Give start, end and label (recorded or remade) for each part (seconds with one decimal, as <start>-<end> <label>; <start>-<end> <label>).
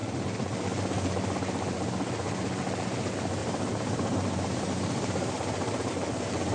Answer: 0.0-3.4 recorded; 3.4-5.9 remade; 5.9-6.5 recorded